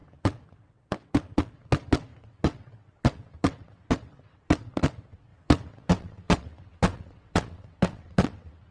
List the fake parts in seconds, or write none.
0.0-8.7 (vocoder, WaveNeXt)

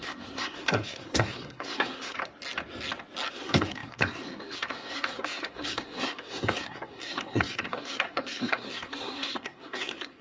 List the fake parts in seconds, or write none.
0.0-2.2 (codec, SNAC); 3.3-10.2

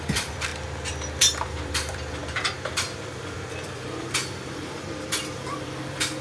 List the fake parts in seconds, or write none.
0.0-0.5 (vocoder, BigVGAN v2); 1.2-6.2

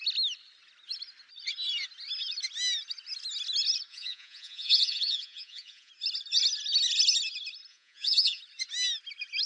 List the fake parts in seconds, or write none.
3.9-5.9 (vocoder, Vocos); 7.7-8.4

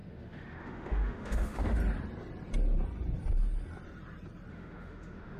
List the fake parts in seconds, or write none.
0.0-1.8 (autoencoder, DAC-VAE); 4.5-5.4

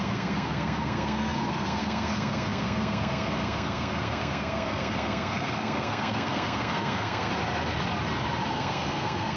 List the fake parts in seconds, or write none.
0.0-7.3 (codec, SNAC); 8.5-9.4

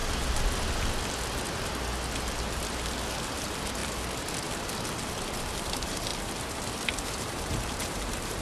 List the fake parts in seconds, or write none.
3.3-3.8 (vocoder, BigVGAN v2); 5.4-6.1; 7.1-8.4